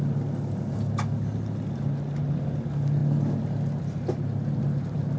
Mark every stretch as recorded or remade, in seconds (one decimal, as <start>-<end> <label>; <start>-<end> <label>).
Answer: 0.0-5.2 recorded